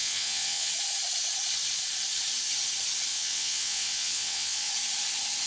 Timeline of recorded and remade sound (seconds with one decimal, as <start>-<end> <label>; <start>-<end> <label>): 0.0-0.7 remade; 0.7-3.1 recorded; 3.1-4.7 remade; 4.7-5.5 recorded